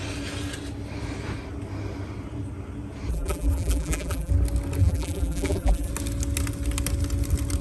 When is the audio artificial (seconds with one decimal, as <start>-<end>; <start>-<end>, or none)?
3.1-4.3; 4.8-5.9